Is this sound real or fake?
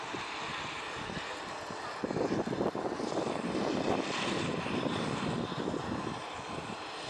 real